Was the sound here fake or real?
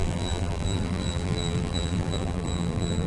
fake